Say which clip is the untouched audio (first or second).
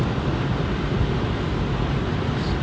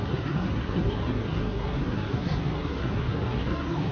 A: first